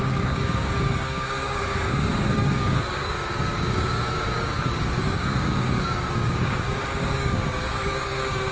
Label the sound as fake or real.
fake